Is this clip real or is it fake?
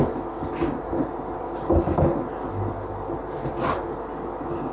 real